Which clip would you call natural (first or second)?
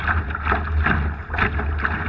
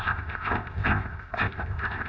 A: first